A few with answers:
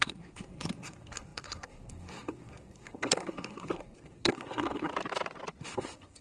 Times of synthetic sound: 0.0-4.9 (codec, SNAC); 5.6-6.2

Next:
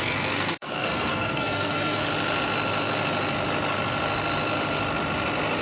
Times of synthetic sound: 0.0-2.0 (codec, SNAC)

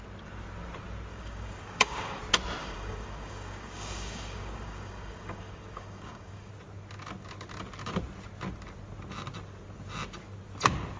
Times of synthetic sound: 1.1-2.2 (codec, DAC); 2.6-6.5

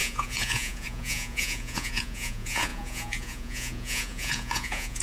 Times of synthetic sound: 0.0-5.0 (vocoder, Vocos)